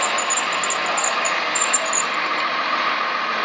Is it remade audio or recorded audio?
recorded